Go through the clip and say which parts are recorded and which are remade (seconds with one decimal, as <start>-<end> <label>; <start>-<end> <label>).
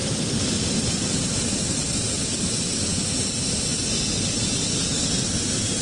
0.0-5.8 recorded